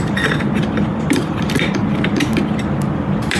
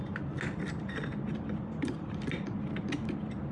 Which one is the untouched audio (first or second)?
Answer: second